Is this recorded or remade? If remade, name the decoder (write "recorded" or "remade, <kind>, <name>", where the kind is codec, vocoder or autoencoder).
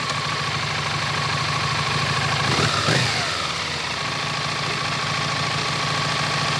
recorded